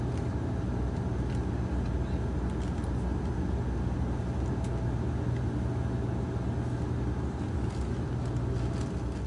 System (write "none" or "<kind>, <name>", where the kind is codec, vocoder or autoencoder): none